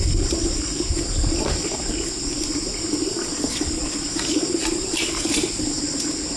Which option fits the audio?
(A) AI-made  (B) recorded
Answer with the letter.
B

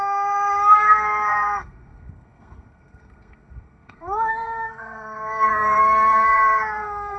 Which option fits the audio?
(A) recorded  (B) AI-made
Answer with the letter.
B